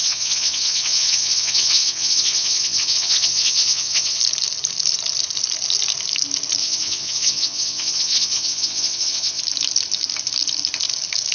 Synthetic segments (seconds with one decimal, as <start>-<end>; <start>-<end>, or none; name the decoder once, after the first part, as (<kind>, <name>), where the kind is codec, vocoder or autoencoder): 0.0-4.2 (vocoder, WaveNeXt); 6.6-9.4